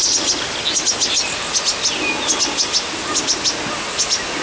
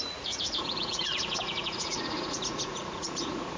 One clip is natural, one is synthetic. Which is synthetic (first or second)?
second